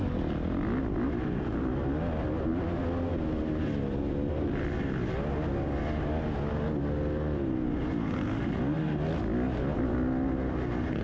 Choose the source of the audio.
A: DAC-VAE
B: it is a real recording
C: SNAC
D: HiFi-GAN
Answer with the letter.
B